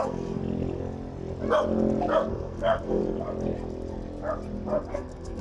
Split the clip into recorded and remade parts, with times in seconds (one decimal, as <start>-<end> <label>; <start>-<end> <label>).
0.0-0.4 remade; 0.4-2.3 recorded; 2.3-3.0 remade; 3.0-4.9 recorded; 4.9-5.4 remade